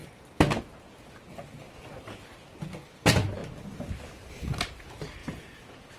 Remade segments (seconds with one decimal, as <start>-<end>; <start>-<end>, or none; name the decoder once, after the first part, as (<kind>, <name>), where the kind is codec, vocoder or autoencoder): 5.2-6.0 (vocoder, Vocos)